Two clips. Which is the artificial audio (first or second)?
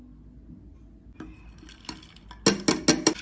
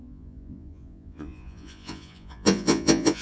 second